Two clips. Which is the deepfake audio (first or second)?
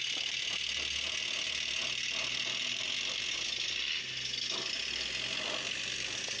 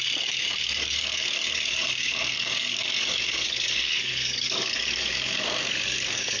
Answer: second